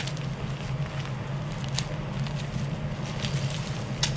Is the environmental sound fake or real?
real